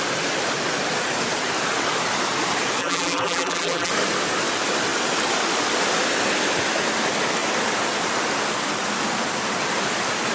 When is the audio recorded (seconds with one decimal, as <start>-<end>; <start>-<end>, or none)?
0.0-2.8; 3.9-10.3